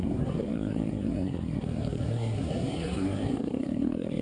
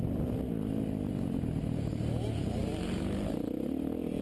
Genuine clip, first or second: second